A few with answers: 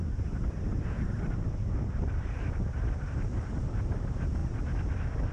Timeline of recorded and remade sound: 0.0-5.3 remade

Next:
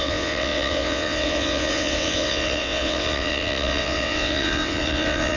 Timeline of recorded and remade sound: 0.0-5.4 remade

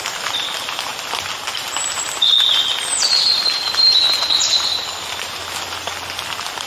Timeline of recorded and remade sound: 0.0-6.7 recorded

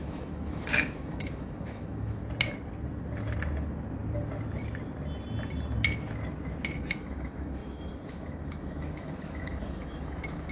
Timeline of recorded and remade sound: 0.0-2.2 remade; 2.2-6.8 recorded; 6.8-10.5 remade

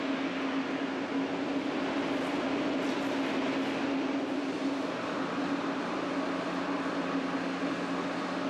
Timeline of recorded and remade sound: 0.0-8.5 recorded

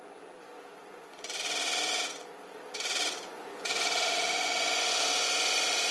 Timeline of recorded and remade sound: 0.0-5.9 remade